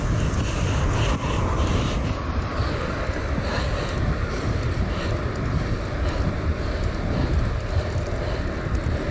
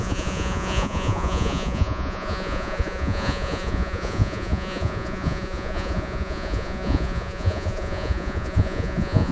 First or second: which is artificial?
second